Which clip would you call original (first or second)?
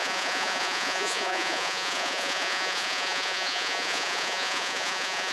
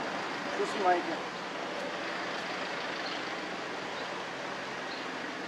second